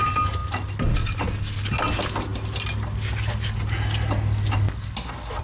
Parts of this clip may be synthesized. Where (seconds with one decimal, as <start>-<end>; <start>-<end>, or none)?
none